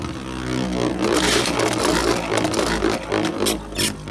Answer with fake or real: real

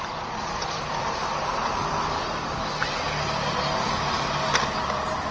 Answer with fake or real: real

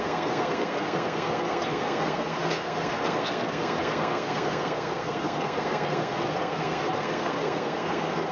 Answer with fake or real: fake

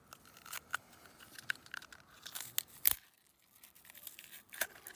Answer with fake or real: real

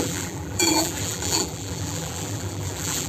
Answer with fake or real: fake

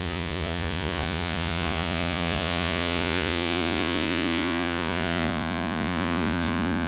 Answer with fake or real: fake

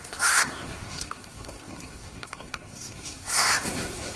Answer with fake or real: fake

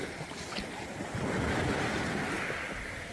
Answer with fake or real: real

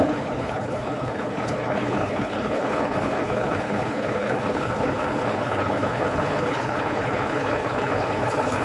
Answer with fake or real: fake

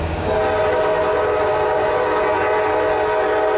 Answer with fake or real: real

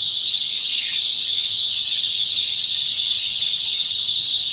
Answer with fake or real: fake